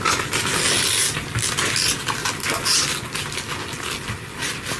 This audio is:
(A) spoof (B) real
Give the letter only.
B